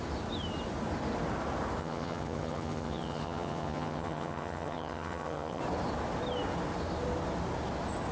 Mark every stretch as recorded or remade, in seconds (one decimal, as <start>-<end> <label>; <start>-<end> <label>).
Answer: 0.0-1.8 recorded; 1.8-5.6 remade; 5.6-8.1 recorded